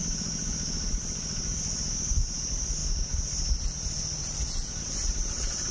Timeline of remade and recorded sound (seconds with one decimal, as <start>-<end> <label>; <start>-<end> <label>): 0.0-2.8 remade; 2.8-4.8 recorded; 4.8-5.7 remade